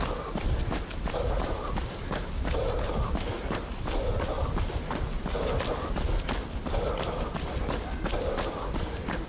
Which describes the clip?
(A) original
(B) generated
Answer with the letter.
A